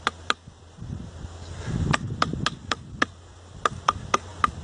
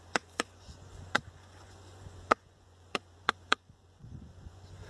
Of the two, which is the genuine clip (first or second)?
first